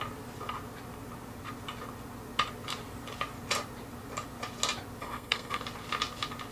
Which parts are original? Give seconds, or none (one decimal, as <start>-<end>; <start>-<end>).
0.0-5.0; 5.6-6.5